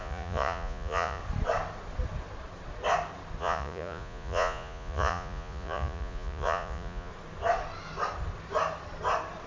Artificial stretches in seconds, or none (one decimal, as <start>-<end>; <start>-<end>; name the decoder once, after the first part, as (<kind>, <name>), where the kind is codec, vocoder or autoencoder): 0.0-1.2 (vocoder, Vocos); 3.4-7.1